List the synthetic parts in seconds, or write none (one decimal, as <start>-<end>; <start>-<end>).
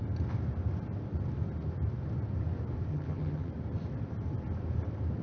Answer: 2.9-3.5